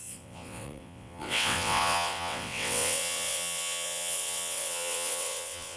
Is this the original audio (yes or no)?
no